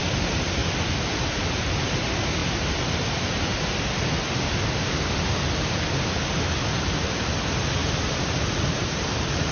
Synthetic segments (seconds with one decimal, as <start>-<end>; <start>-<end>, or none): 0.0-0.6; 1.6-2.4; 6.7-9.5